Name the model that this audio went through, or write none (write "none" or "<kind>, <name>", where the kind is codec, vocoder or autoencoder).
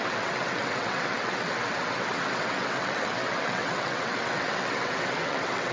vocoder, WaveNeXt